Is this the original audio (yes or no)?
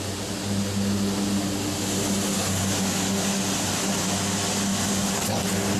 yes